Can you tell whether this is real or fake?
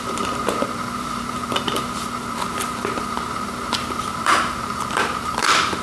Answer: fake